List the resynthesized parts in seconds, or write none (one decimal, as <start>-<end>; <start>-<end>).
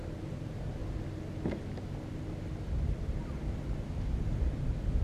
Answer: 0.0-0.8; 3.8-5.0